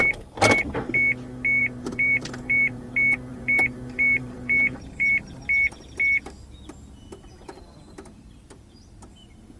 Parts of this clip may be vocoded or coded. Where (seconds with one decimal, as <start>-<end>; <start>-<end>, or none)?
1.6-2.9; 3.3-5.4